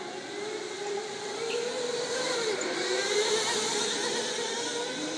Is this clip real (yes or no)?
yes